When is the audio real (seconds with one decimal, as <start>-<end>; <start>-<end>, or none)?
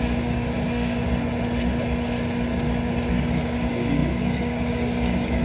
1.0-3.1